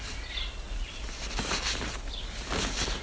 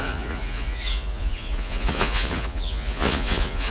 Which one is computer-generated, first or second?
second